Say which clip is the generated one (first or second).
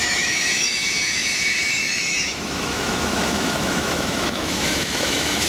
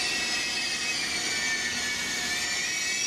first